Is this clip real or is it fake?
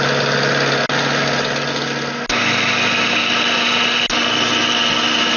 real